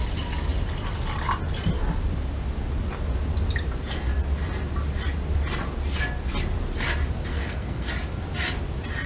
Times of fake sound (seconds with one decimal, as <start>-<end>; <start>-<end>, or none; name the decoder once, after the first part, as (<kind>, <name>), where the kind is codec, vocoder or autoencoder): 7.3-7.9 (codec, SNAC)

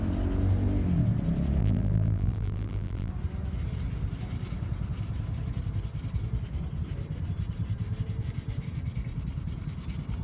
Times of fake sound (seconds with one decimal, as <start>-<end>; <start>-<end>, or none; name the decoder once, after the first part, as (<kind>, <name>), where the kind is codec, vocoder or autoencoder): 1.6-3.1 (vocoder, BigVGAN v2)

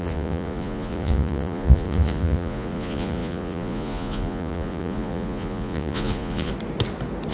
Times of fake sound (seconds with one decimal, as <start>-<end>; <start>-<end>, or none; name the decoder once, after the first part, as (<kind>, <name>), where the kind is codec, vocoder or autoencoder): 0.0-6.5 (vocoder, Vocos)